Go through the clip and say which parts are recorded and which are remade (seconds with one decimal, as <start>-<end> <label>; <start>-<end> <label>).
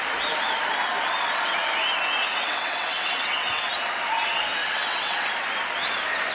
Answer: 0.0-2.3 recorded; 2.3-3.7 remade; 3.7-4.6 recorded; 4.6-5.3 remade; 5.3-6.3 recorded